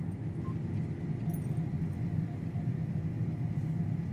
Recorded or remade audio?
recorded